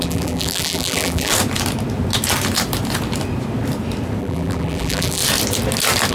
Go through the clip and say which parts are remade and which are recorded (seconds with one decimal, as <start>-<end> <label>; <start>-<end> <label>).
0.0-1.3 remade; 1.3-4.2 recorded; 4.2-5.2 remade; 5.2-6.1 recorded